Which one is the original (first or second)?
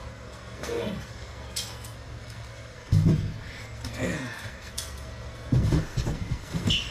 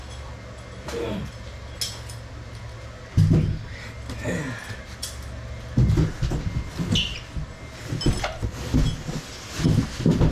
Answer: second